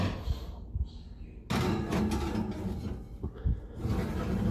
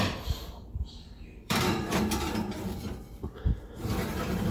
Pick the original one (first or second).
first